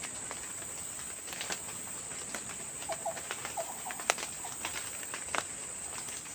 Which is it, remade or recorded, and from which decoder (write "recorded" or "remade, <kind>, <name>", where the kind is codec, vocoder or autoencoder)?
recorded